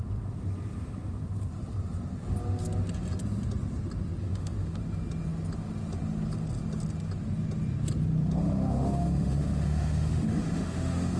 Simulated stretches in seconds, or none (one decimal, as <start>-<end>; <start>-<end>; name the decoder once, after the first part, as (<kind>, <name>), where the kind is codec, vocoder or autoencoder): 4.2-4.8 (autoencoder, DAC-VAE); 8.4-11.2